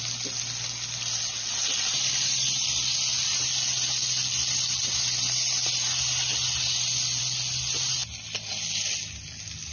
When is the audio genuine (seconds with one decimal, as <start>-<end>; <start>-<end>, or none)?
0.0-9.7